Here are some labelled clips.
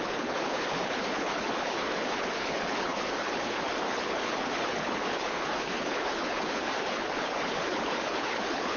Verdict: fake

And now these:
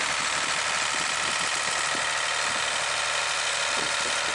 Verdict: real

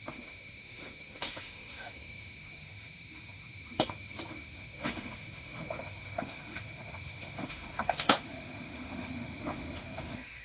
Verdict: fake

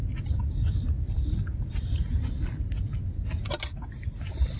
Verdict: real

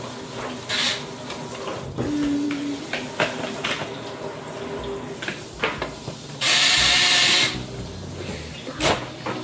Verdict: real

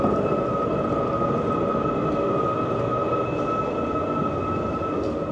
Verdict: real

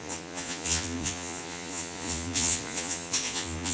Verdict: fake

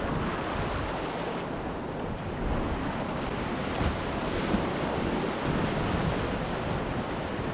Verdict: real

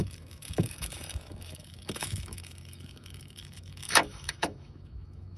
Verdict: fake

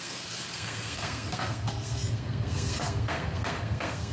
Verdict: fake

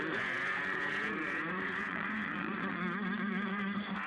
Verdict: fake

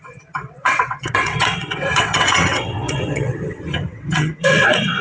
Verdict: fake